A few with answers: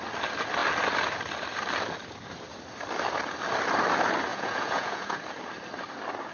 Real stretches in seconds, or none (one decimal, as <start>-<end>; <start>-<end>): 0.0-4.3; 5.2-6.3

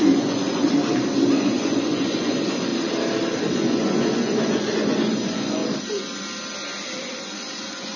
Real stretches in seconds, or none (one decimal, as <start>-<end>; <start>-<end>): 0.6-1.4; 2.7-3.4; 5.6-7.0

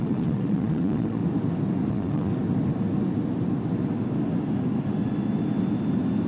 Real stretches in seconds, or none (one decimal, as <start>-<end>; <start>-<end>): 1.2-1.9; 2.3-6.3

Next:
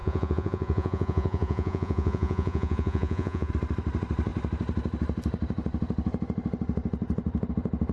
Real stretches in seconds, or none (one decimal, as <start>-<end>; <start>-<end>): 3.5-7.9

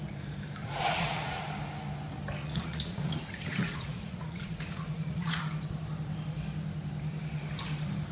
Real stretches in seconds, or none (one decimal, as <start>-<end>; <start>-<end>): 0.0-0.6; 1.4-2.4; 5.4-8.1